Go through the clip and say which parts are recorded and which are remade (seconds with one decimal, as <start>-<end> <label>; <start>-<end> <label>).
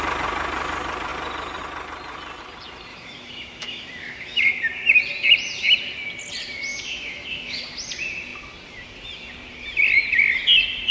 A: 0.0-2.9 recorded; 2.9-4.5 remade; 4.5-6.7 recorded; 6.7-7.6 remade; 7.6-10.9 recorded